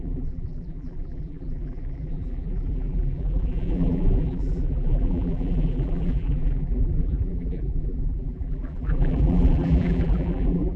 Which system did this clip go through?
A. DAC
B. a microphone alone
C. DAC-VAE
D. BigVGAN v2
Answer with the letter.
D